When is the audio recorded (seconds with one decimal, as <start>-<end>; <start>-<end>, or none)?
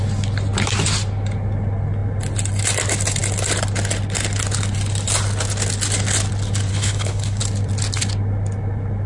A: 0.0-6.7; 7.4-9.1